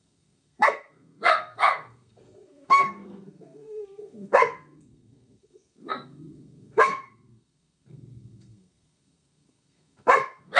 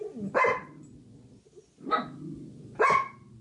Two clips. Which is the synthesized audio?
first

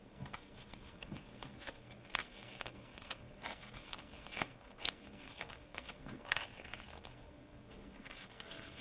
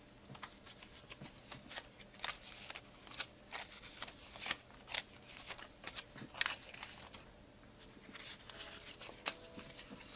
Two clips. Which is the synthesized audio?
first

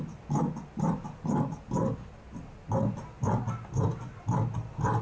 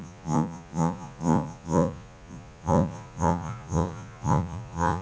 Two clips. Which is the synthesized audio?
second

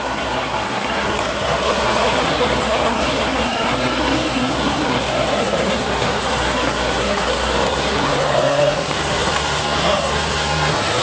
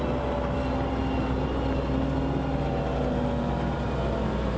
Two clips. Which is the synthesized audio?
first